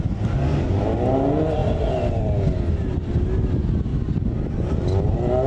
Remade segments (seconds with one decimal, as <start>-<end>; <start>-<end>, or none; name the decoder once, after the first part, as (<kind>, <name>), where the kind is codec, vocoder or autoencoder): none